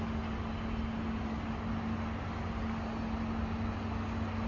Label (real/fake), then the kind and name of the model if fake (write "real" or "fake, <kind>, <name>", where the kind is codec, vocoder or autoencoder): real